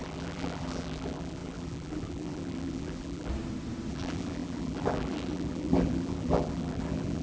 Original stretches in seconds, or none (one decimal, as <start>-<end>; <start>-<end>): 3.3-3.9